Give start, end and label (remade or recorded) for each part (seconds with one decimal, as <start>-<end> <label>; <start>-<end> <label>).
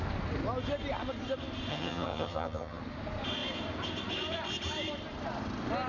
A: 0.0-1.7 recorded; 1.7-2.8 remade; 2.8-5.9 recorded